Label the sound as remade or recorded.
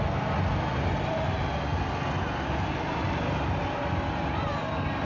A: recorded